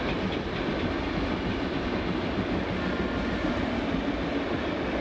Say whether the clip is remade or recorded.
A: recorded